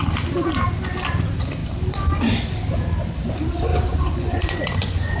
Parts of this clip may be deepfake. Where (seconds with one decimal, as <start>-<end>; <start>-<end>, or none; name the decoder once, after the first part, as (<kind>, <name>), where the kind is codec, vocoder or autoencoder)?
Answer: 3.7-5.2 (vocoder, Vocos)